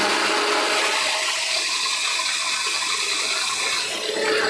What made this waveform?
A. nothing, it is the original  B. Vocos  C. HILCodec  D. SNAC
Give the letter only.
A